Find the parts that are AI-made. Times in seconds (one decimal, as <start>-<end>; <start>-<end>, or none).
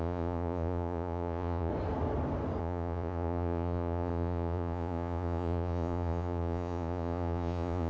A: 0.0-1.7; 2.6-7.9